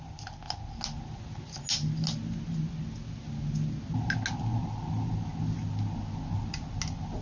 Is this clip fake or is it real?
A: real